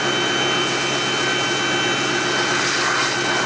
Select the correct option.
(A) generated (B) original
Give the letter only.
B